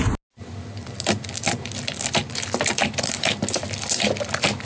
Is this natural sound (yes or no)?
yes